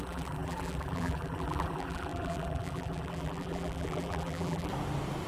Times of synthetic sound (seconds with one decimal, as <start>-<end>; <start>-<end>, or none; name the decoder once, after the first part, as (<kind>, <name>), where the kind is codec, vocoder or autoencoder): 0.0-4.7 (vocoder, BigVGAN v2)